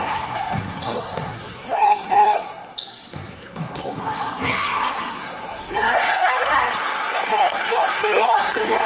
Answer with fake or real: fake